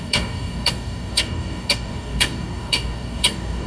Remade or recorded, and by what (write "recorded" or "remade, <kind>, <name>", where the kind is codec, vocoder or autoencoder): remade, codec, DAC